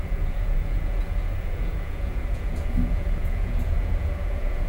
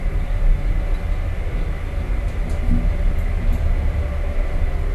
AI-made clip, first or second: first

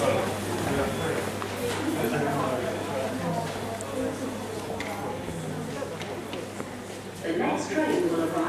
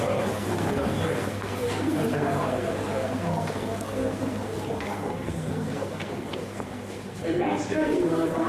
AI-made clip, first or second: second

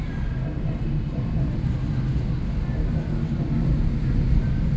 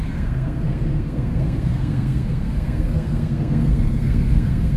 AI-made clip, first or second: second